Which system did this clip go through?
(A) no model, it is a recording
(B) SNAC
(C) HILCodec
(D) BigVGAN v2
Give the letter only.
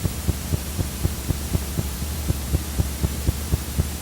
D